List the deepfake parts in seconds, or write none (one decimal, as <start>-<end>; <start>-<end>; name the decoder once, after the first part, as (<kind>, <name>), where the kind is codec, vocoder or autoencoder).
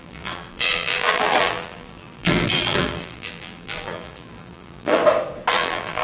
0.0-5.0 (vocoder, BigVGAN v2); 5.5-6.0